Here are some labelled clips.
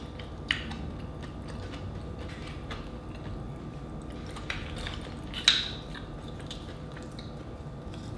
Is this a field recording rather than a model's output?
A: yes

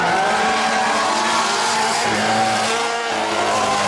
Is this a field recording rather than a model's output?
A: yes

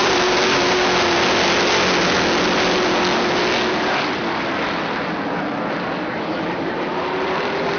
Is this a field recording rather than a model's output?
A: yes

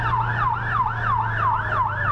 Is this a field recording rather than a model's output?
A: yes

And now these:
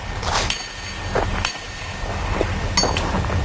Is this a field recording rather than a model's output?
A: yes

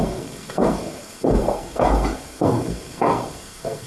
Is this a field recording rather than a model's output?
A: no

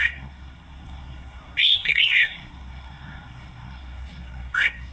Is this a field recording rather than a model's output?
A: no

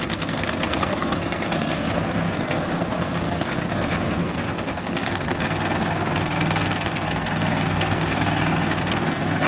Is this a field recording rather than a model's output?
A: no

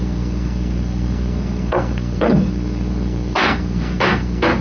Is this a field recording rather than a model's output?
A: no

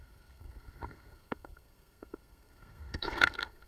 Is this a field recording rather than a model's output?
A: no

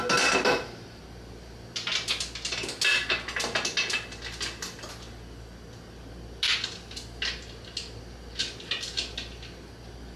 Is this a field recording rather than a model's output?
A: yes